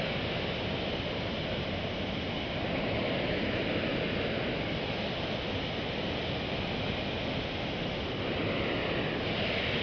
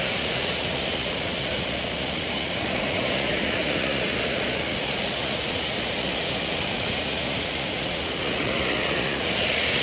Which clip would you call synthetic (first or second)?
second